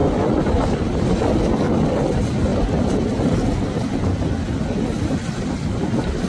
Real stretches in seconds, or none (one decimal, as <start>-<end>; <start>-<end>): 0.0-6.3